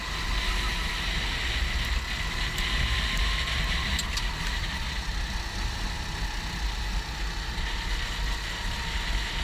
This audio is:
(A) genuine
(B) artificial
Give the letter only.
A